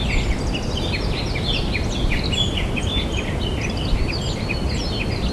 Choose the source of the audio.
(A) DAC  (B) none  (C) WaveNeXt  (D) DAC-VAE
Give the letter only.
B